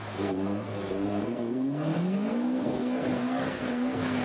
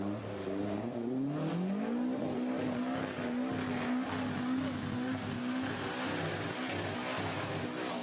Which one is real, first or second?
second